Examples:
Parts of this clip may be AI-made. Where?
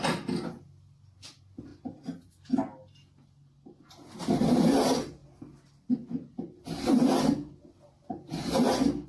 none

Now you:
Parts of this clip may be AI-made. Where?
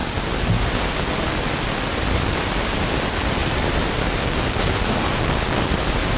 none